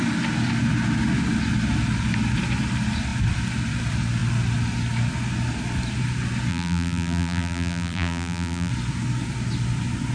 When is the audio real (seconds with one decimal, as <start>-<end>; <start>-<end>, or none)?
0.0-6.5; 8.7-10.1